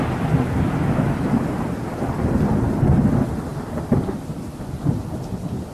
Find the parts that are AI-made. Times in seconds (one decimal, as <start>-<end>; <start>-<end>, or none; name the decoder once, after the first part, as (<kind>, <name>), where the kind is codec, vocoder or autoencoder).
3.5-4.4 (vocoder, BigVGAN v2)